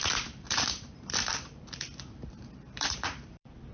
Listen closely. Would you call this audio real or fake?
fake